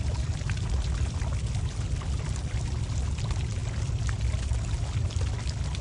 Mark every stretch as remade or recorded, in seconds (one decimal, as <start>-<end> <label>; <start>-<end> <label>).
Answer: 0.0-5.8 recorded